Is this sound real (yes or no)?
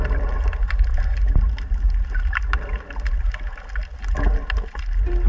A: yes